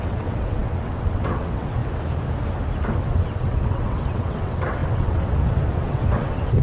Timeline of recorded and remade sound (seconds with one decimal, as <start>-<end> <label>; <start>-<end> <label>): 0.0-1.8 remade; 1.8-3.0 recorded; 3.0-6.6 remade